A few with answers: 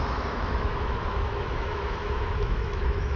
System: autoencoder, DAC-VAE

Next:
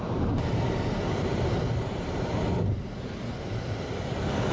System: vocoder, BigVGAN v2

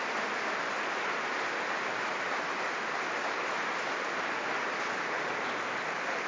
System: none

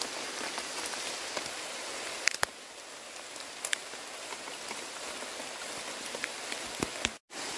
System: none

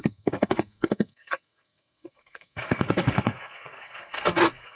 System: codec, SNAC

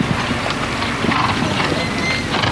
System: none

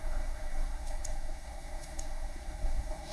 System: codec, SNAC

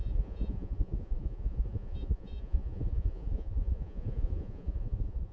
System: vocoder, Vocos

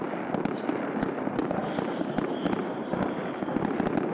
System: none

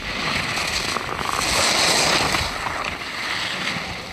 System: none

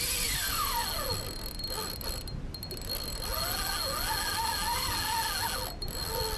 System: none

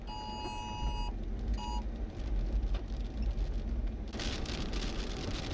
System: none